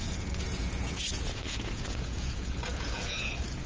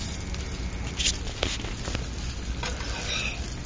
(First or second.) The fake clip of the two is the first